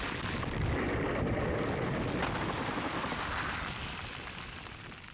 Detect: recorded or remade recorded